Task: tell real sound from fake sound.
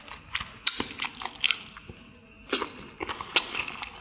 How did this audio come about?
real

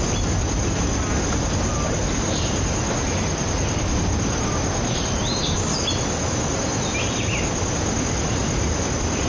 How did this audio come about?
real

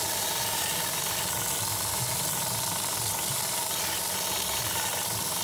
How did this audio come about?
real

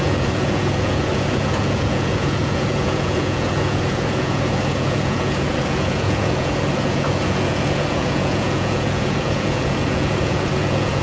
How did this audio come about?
fake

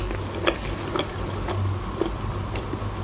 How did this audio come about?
real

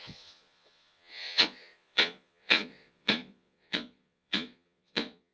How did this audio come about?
fake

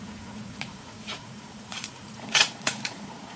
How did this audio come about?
fake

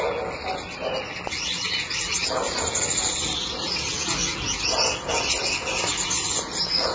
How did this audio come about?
real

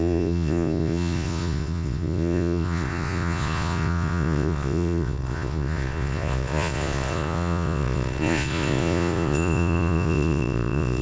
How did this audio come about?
fake